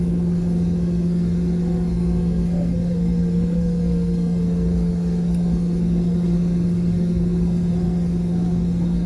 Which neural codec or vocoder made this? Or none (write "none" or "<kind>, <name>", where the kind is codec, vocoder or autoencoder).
codec, SNAC